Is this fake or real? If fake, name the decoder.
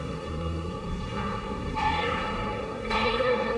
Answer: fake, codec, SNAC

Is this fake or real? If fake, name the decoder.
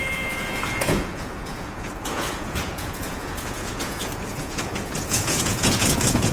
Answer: fake, vocoder, Vocos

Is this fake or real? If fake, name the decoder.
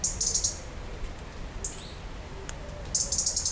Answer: real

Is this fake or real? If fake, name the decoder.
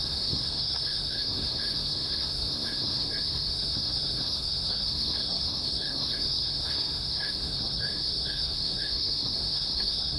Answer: fake, codec, SNAC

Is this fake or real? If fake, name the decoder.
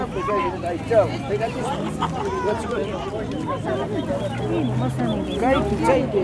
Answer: real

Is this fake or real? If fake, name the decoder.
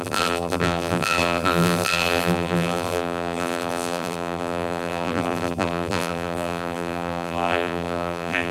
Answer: fake, vocoder, BigVGAN v2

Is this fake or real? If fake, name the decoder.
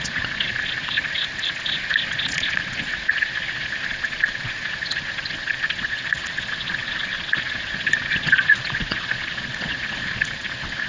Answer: fake, vocoder, Vocos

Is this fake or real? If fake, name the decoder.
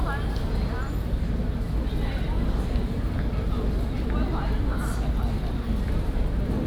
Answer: real